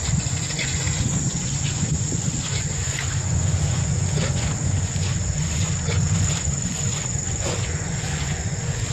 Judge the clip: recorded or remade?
remade